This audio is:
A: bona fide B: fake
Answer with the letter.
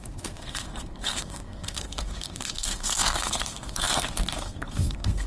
B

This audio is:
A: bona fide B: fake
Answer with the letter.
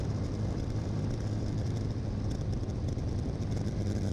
B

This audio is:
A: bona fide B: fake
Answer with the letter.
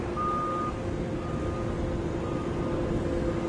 A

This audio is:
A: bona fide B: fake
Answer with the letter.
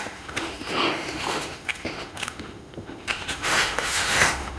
B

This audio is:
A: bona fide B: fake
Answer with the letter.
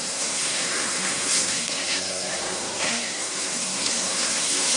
B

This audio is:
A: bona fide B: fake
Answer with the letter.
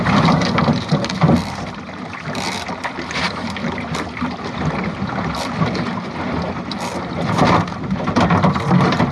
A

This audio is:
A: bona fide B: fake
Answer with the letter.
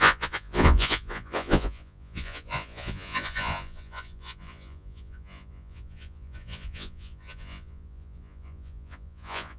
B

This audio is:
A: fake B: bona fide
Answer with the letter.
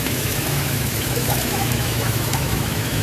A